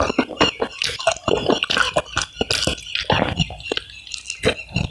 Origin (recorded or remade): recorded